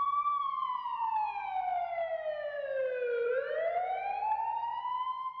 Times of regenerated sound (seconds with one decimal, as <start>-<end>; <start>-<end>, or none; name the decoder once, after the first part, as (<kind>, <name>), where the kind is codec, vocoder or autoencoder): none